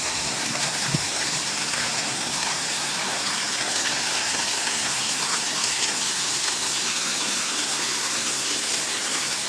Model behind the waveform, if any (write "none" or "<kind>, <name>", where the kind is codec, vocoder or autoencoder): codec, SNAC